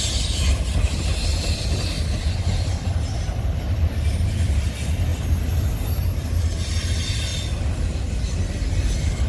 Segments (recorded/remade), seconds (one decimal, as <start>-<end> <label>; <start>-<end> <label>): 0.0-1.3 recorded; 1.3-2.0 remade; 2.0-5.1 recorded; 5.1-5.6 remade; 5.6-9.3 recorded